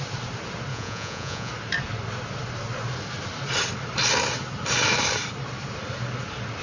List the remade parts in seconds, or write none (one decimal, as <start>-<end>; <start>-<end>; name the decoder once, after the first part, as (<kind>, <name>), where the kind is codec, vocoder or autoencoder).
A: 0.7-1.5 (vocoder, Vocos)